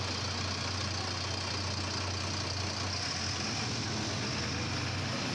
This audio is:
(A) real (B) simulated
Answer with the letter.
A